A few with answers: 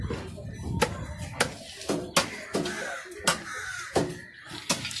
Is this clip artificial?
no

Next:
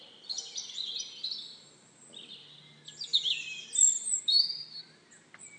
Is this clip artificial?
no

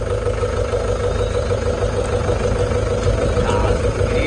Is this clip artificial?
no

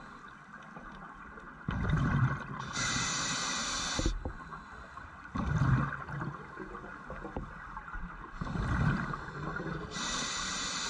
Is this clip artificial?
no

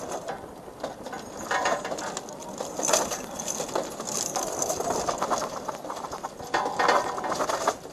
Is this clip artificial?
no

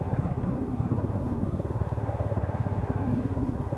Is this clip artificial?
yes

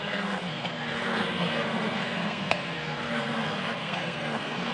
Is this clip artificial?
yes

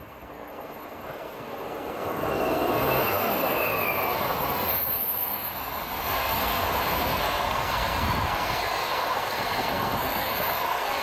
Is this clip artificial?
yes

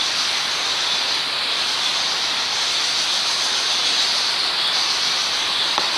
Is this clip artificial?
no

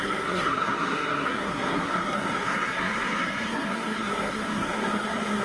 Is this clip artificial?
yes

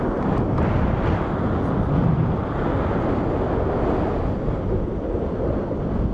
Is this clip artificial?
no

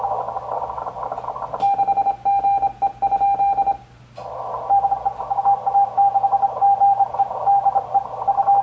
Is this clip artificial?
no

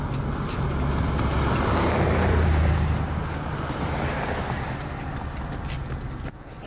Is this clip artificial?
no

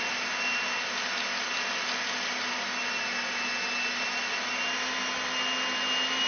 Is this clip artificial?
no